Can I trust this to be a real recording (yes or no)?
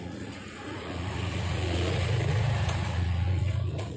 no